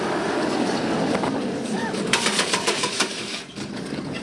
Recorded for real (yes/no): no